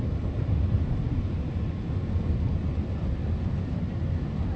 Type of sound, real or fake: real